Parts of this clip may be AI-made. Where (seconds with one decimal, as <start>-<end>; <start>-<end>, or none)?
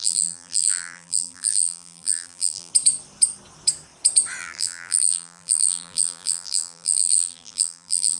0.0-2.7; 4.4-8.2